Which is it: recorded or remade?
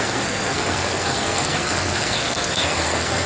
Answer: remade